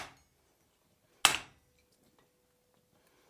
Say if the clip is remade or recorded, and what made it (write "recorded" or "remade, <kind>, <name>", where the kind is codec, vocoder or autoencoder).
recorded